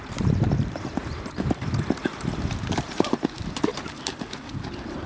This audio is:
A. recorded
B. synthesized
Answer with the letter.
B